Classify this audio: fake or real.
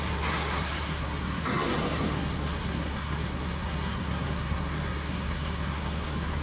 fake